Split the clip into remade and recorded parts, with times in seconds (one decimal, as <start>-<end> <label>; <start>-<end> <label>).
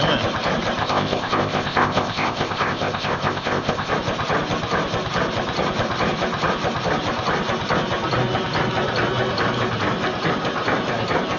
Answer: 0.0-0.8 recorded; 0.8-3.9 remade; 3.9-11.4 recorded